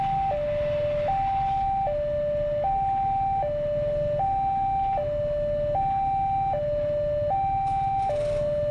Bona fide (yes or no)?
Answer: yes